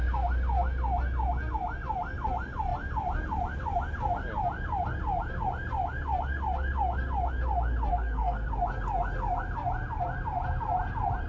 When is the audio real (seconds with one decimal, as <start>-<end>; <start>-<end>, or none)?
0.0-7.9; 8.5-11.3

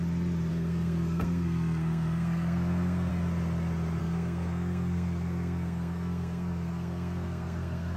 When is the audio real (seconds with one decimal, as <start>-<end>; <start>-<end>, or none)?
0.0-0.5; 3.1-4.0

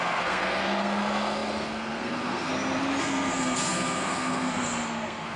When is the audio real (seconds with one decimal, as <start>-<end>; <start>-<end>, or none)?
2.5-3.0